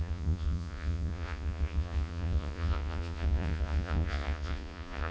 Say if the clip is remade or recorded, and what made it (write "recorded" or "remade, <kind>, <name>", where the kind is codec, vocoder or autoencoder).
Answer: remade, vocoder, Vocos